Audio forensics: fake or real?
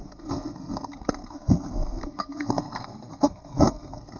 fake